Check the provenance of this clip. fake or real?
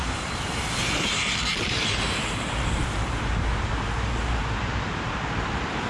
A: fake